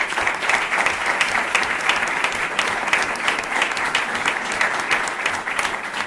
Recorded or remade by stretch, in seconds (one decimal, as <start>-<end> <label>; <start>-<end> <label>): 0.0-6.1 recorded